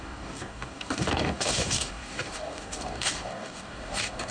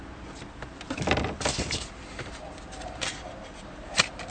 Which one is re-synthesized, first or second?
first